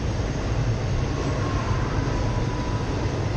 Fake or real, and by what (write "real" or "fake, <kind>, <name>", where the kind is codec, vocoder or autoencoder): real